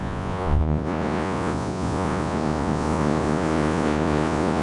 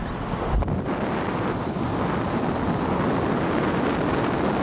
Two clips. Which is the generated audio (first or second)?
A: first